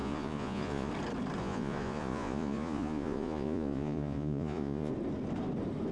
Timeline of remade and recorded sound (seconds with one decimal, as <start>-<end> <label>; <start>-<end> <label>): 0.0-0.9 remade; 0.9-1.4 recorded; 1.4-4.9 remade; 4.9-5.9 recorded